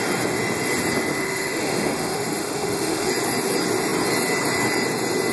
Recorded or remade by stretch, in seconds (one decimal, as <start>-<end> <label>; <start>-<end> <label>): 0.0-1.1 recorded; 1.1-3.1 remade; 3.1-5.3 recorded